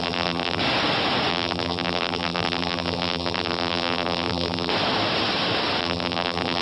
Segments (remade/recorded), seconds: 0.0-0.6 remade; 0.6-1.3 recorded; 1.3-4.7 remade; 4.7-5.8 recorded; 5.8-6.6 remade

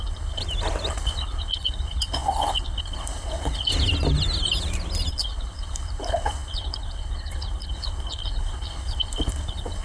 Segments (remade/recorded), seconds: 0.0-0.4 remade; 0.4-0.9 recorded; 0.9-3.7 remade; 3.7-5.1 recorded; 5.1-9.8 remade

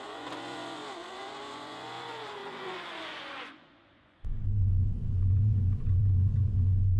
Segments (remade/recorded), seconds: 0.0-7.0 remade

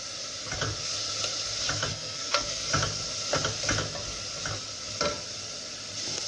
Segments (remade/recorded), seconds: 0.0-1.9 recorded; 1.9-2.7 remade; 2.7-6.3 recorded

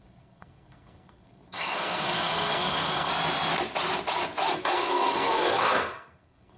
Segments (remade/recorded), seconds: 0.0-3.1 remade; 3.1-4.5 recorded; 4.5-6.6 remade